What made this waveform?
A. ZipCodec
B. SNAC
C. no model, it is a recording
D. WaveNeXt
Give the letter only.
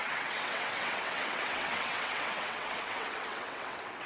D